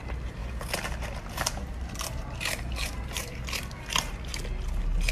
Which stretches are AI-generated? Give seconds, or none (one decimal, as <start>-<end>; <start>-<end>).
2.8-3.4